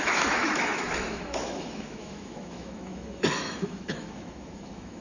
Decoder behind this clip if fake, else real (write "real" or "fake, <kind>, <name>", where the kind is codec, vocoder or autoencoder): fake, autoencoder, DAC-VAE